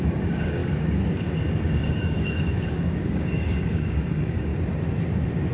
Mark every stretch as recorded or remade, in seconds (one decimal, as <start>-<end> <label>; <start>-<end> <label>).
0.0-4.5 remade; 4.5-5.5 recorded